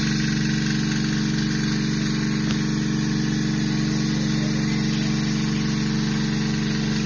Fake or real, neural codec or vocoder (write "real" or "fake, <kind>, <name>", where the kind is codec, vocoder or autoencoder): real